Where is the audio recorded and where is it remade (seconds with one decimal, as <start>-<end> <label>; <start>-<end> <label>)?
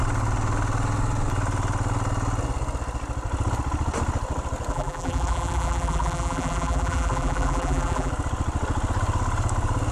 0.0-4.7 recorded; 4.7-8.1 remade; 8.1-9.9 recorded